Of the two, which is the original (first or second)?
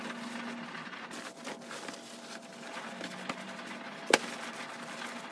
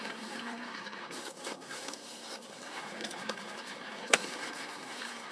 first